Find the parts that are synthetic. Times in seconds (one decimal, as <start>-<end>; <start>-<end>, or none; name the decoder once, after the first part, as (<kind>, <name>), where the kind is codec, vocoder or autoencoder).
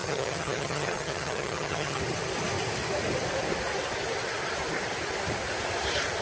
0.0-2.0 (vocoder, HiFi-GAN)